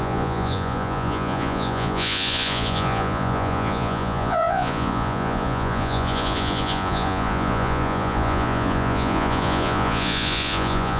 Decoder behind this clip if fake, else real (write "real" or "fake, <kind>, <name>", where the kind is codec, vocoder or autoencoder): fake, vocoder, Vocos